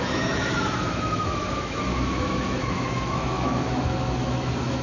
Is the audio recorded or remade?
remade